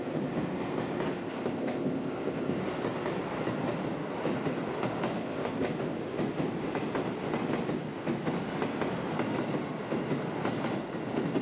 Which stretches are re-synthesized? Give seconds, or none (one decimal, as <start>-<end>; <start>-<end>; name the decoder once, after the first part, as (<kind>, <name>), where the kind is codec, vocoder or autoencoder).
1.2-2.6 (codec, ZipCodec); 5.2-5.7